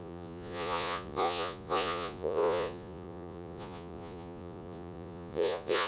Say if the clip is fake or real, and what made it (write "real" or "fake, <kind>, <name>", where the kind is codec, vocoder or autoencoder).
fake, vocoder, Vocos